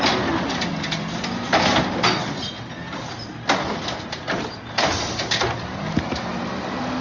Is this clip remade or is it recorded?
recorded